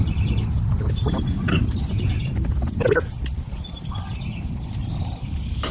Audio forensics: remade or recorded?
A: recorded